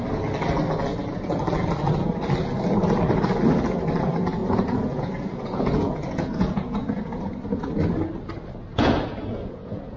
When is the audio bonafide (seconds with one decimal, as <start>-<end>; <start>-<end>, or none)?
0.0-4.4; 7.0-8.7